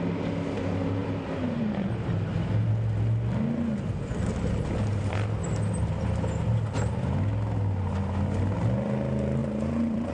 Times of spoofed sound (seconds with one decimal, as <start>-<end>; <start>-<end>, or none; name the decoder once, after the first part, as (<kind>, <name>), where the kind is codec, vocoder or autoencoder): 9.4-10.1 (vocoder, BigVGAN v2)